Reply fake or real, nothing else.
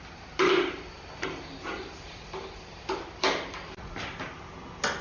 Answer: real